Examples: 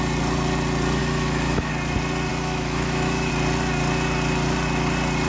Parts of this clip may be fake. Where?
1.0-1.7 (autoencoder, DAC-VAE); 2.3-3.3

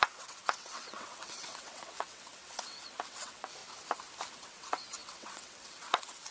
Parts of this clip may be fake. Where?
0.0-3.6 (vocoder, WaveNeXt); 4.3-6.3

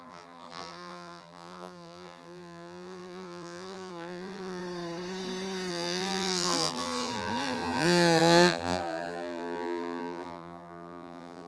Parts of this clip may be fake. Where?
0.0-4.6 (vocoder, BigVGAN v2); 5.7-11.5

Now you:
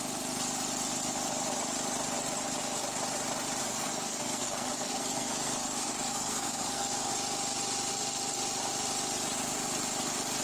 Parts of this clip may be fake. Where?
3.6-7.1 (codec, SNAC)

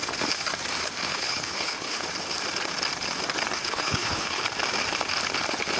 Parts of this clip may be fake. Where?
1.1-2.0 (codec, HILCodec); 3.6-4.4

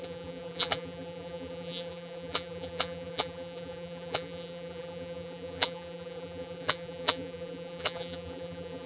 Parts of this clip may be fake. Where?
0.0-8.9 (vocoder, BigVGAN v2)